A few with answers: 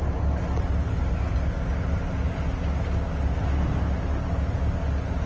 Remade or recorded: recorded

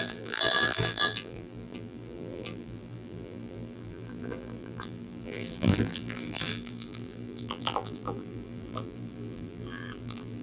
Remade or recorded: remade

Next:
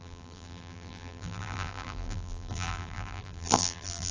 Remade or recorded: remade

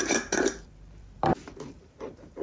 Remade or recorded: remade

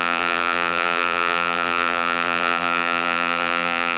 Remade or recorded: remade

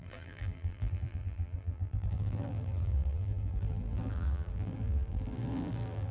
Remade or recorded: remade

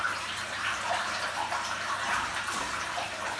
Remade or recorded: remade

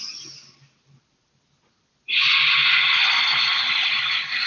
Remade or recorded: recorded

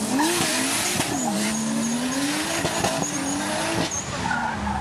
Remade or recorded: recorded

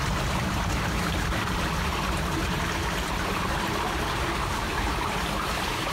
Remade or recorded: remade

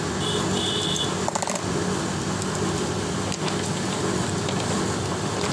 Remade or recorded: remade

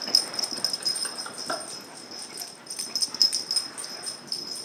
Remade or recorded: recorded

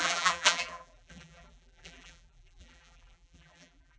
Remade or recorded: remade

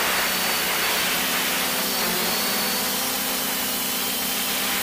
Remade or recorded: recorded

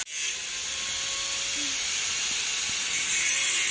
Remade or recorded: recorded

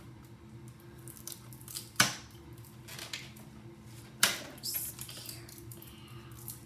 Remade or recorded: recorded